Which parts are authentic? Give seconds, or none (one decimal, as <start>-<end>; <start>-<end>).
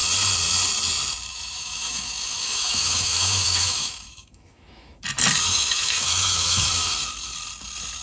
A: 0.0-1.3; 5.0-5.5; 6.7-8.0